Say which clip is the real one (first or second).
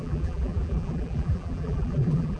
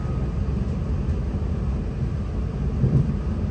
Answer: second